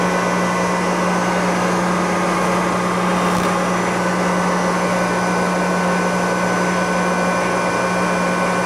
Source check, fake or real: real